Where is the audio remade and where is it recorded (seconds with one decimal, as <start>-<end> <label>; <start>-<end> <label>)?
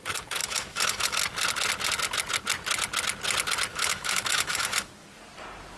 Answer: 0.0-0.4 recorded; 0.4-1.2 remade; 1.2-3.7 recorded; 3.7-4.9 remade; 4.9-5.8 recorded